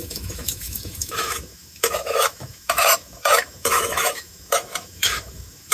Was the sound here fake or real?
fake